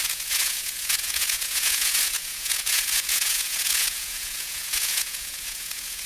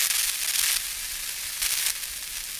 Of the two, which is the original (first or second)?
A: second